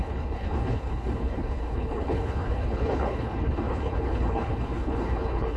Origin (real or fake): fake